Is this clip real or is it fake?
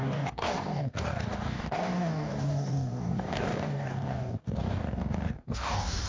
fake